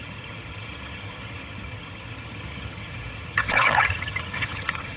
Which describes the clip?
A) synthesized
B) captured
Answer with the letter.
A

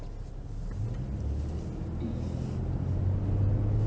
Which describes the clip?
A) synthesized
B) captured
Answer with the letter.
B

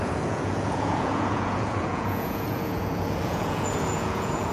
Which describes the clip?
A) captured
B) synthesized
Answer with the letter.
B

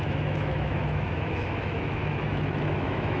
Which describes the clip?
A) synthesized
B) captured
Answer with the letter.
A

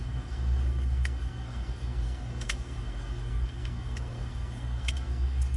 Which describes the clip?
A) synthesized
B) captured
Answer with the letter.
A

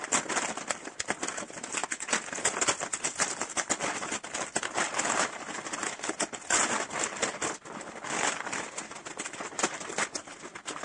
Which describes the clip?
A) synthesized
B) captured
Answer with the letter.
B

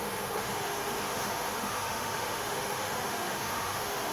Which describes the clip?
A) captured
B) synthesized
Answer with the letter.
B